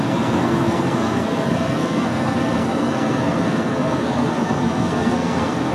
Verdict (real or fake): fake